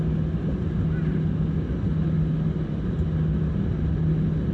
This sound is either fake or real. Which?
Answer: real